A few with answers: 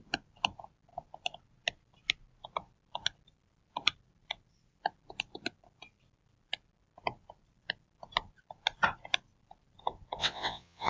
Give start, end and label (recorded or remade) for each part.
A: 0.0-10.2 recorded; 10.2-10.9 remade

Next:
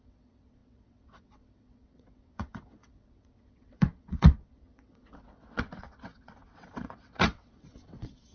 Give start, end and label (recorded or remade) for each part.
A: 0.0-8.3 remade

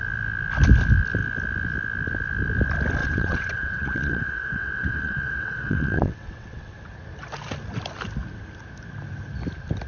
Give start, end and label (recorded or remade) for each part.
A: 0.0-3.0 recorded; 3.0-6.8 remade; 6.8-9.9 recorded

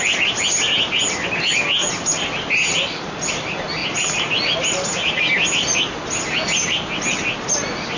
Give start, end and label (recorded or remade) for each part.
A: 0.0-8.0 recorded

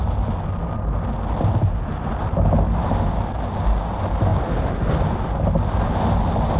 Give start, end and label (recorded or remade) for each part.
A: 0.0-6.6 recorded